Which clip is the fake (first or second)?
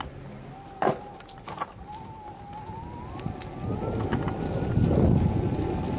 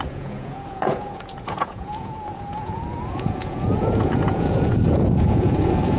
second